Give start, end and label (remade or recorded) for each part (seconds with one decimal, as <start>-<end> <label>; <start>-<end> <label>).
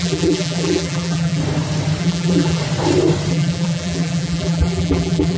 0.0-1.4 remade; 1.4-2.0 recorded; 2.0-2.6 remade; 2.6-3.3 recorded; 3.3-5.4 remade